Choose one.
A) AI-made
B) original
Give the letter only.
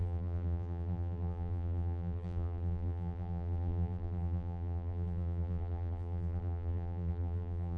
A